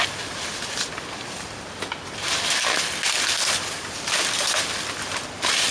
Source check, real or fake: real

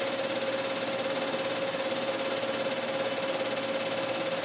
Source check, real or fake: real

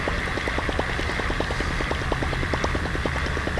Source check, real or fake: real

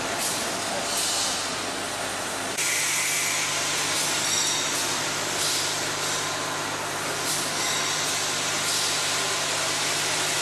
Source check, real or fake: real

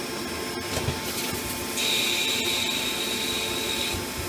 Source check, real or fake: real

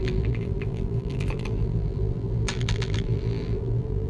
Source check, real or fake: fake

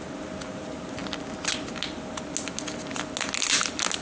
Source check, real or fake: real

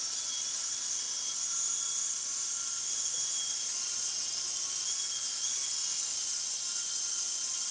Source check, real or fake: real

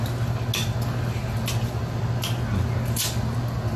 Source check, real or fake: real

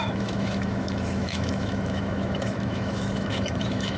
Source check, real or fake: fake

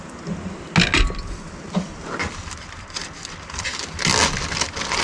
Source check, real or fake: real